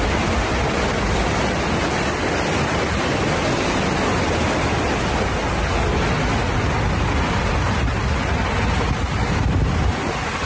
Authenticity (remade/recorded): recorded